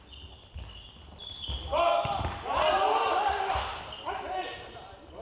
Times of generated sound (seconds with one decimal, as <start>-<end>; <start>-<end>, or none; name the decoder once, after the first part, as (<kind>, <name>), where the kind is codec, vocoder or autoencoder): none